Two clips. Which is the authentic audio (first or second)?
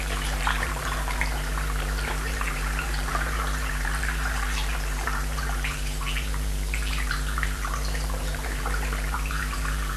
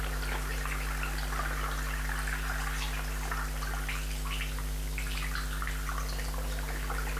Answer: second